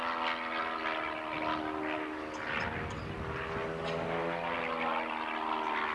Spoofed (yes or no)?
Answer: no